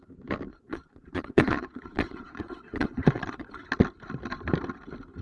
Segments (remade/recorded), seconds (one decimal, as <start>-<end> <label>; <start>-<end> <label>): 0.0-0.5 recorded; 0.5-3.6 remade; 3.6-5.2 recorded